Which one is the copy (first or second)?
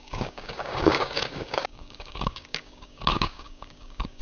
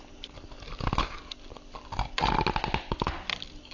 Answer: first